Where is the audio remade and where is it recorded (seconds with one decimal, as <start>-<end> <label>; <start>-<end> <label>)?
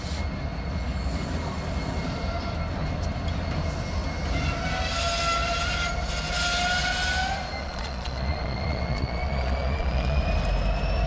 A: 0.0-7.6 recorded; 7.6-10.2 remade; 10.2-11.1 recorded